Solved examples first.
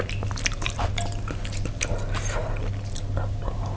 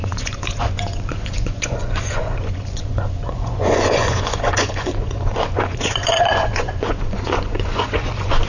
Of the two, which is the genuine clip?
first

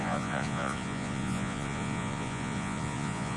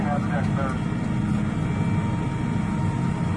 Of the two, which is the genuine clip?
second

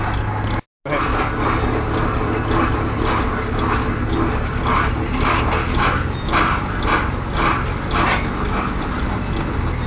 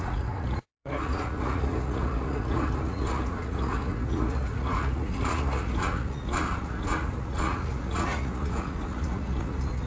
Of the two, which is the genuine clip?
first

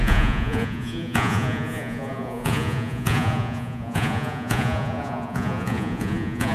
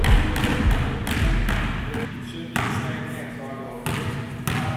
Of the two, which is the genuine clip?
second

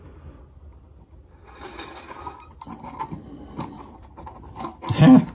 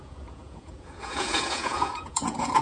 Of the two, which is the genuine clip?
first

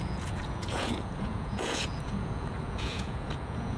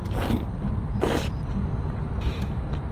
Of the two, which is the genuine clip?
second